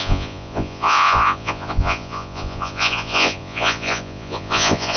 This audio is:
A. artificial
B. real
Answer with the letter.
A